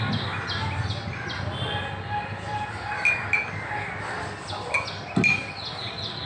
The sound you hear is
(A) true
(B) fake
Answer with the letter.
A